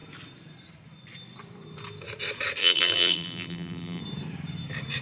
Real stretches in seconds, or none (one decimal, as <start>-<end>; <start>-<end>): 0.0-2.6; 4.0-5.0

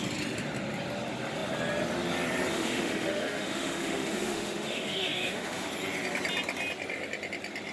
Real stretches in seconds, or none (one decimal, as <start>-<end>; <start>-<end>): 0.0-2.5; 5.7-7.7

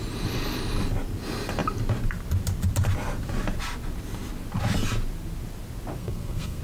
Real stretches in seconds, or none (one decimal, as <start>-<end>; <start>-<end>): 0.0-6.0

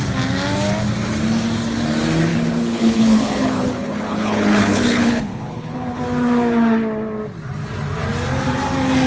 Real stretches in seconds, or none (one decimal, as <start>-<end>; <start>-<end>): 0.0-2.3; 6.0-9.1

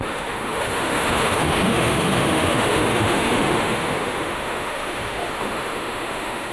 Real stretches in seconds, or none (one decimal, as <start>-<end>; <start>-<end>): none